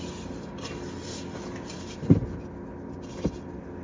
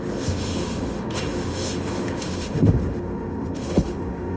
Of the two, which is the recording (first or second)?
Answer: first